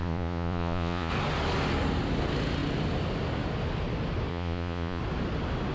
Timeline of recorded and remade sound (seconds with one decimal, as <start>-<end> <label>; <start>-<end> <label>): 0.0-1.1 remade; 1.1-4.3 recorded; 4.3-5.0 remade; 5.0-5.7 recorded